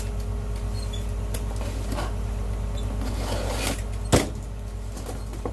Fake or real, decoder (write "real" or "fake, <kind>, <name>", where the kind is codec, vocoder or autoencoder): real